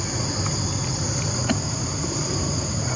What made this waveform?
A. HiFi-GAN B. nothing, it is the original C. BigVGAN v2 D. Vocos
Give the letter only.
B